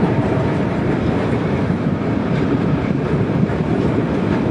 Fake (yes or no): yes